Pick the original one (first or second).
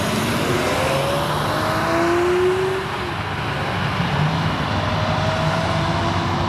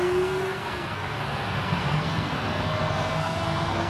first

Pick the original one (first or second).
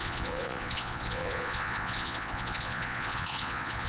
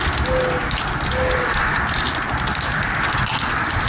second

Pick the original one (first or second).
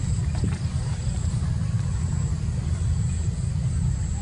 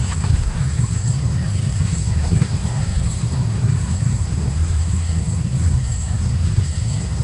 first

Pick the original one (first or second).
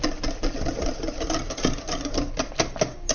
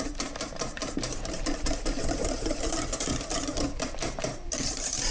first